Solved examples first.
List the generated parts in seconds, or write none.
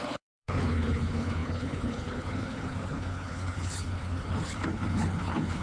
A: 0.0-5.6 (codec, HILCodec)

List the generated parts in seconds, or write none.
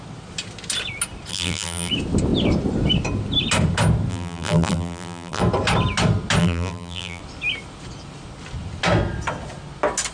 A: 1.3-1.9 (vocoder, BigVGAN v2); 4.1-5.4; 6.4-7.2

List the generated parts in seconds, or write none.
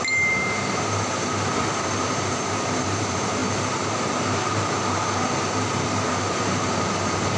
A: 0.0-7.4 (vocoder, BigVGAN v2)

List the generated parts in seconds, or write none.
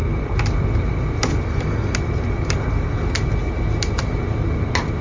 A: 0.0-1.3 (vocoder, BigVGAN v2)